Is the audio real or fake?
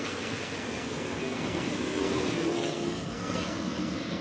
fake